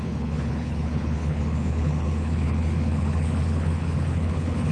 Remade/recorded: remade